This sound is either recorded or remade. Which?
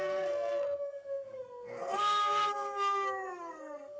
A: remade